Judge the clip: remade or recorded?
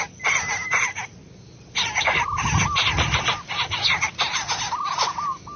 recorded